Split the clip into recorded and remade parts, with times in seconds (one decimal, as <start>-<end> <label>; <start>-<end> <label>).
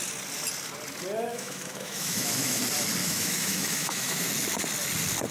0.0-1.3 recorded; 1.3-2.6 remade; 2.6-3.0 recorded; 3.0-4.3 remade; 4.3-5.3 recorded